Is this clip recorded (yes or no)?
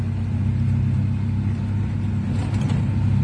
yes